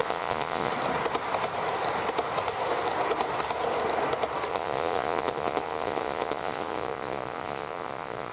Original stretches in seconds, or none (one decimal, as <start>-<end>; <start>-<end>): 0.7-4.5